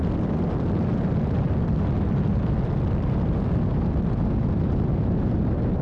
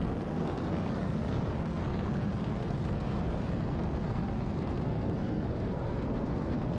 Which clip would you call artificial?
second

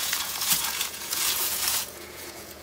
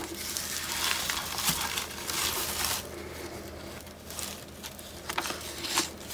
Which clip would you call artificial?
first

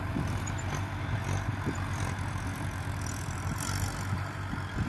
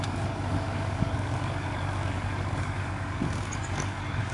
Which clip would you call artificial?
second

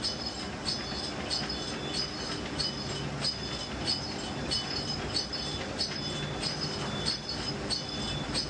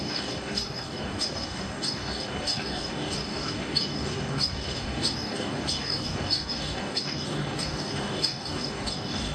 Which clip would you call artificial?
second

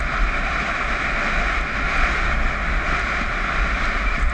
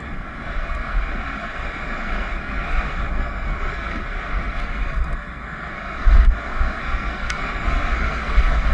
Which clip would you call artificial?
second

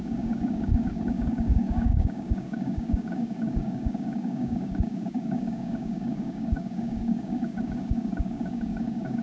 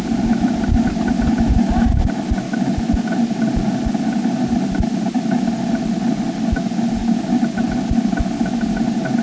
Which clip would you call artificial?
first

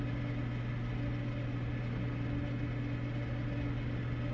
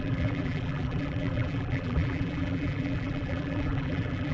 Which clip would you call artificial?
second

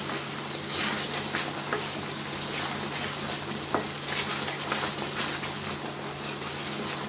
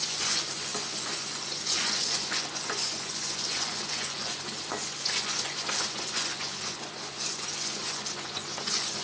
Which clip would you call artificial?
second